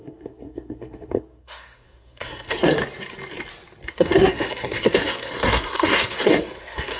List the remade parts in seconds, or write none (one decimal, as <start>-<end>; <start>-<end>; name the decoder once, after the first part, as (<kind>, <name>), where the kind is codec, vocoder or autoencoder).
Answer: 0.0-2.8 (codec, SNAC); 3.9-7.0